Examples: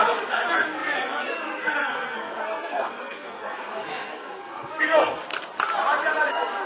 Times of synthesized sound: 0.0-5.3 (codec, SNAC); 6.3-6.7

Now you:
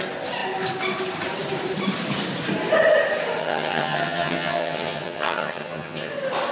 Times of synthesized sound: 3.4-6.1 (vocoder, HiFi-GAN)

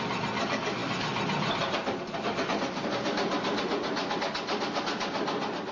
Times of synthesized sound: none